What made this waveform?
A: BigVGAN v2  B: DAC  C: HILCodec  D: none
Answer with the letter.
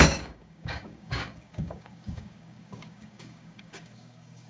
B